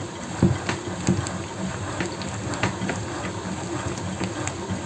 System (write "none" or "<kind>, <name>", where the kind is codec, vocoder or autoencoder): none